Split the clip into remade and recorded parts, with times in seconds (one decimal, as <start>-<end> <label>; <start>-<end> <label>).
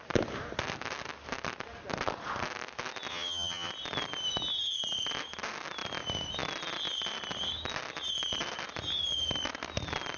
0.0-3.1 recorded; 3.1-3.7 remade; 3.7-10.2 recorded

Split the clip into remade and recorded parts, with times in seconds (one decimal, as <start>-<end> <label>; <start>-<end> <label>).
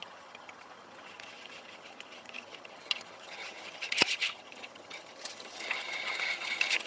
0.0-6.9 remade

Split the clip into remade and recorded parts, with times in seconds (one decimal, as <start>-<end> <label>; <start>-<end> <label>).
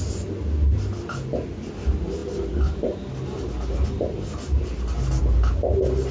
0.0-6.1 recorded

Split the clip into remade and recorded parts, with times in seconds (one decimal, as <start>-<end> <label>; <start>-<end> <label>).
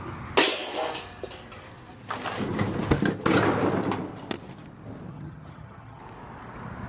0.0-5.1 recorded; 5.1-6.0 remade; 6.0-6.9 recorded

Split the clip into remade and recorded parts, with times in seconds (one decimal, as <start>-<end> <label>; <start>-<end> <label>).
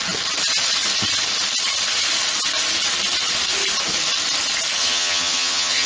0.0-4.8 recorded; 4.8-5.9 remade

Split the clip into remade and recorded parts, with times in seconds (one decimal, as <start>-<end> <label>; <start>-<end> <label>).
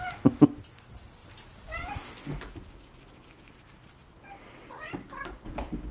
0.0-5.9 recorded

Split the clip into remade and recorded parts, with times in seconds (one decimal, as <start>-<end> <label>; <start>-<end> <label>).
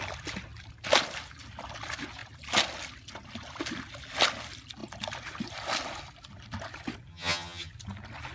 0.0-7.1 recorded; 7.1-7.7 remade; 7.7-8.3 recorded